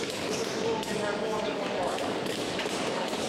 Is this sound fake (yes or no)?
yes